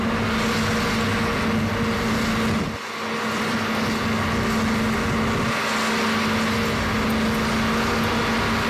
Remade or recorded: recorded